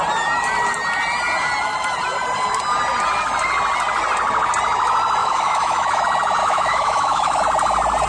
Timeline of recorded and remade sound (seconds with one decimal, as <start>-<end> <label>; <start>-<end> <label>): 0.0-5.2 recorded; 5.2-6.0 remade; 6.0-6.4 recorded; 6.4-7.4 remade; 7.4-8.1 recorded